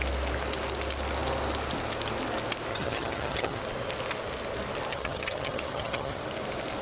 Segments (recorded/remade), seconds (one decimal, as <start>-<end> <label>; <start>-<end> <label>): 0.0-2.7 recorded; 2.7-3.6 remade; 3.6-4.9 recorded; 4.9-6.2 remade; 6.2-6.8 recorded